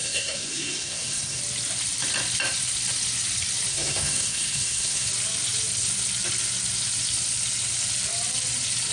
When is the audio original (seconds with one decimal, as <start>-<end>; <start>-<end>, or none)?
1.4-3.7; 5.1-8.9